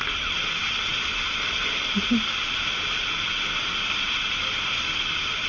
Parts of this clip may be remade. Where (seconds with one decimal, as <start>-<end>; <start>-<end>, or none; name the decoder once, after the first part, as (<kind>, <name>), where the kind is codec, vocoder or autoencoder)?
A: none